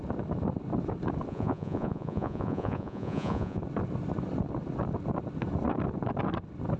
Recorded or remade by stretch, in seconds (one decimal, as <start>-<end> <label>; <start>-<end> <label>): 0.0-1.3 recorded; 1.3-3.6 remade; 3.6-6.8 recorded